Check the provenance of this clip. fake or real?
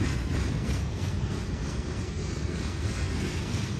fake